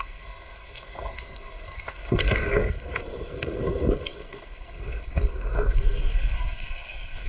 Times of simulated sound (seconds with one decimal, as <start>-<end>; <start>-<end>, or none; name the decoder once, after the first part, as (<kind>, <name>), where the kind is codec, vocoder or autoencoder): 0.0-7.3 (codec, SNAC)